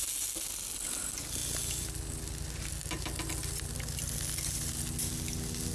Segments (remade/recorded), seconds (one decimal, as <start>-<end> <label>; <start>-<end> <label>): 0.0-5.7 recorded